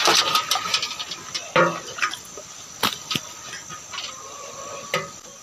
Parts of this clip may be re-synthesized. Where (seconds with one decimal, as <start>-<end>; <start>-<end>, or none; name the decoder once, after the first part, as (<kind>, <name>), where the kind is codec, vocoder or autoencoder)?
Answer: none